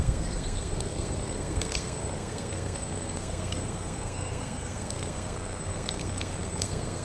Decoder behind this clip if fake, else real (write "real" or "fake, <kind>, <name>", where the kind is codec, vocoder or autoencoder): fake, codec, SNAC